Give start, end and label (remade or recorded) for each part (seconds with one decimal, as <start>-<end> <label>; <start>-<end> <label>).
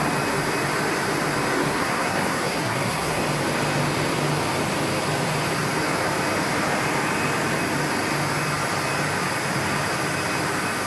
0.0-1.5 recorded; 1.5-3.2 remade; 3.2-10.9 recorded